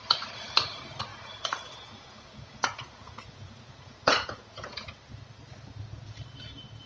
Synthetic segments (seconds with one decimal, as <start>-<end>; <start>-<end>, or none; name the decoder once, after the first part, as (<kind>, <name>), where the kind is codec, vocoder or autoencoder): 1.1-4.9 (vocoder, Vocos)